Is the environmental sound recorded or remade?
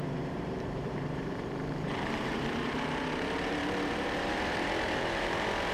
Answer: remade